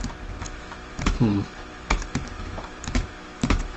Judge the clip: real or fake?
fake